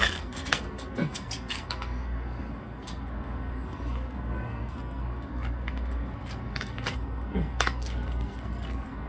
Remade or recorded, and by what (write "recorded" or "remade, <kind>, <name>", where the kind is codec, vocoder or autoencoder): remade, codec, SNAC